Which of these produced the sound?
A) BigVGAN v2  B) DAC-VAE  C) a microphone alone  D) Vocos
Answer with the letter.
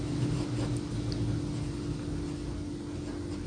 C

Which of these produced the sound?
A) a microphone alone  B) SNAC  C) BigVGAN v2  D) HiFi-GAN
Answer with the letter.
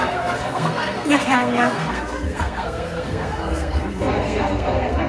B